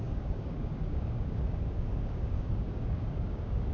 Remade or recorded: remade